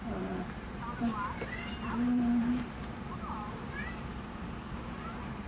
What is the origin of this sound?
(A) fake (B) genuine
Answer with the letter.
A